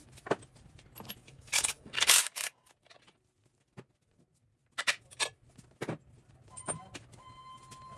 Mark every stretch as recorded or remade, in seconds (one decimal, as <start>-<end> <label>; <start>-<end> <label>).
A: 0.0-1.2 recorded; 1.2-2.7 remade; 2.7-8.0 recorded